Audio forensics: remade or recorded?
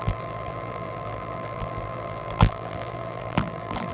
remade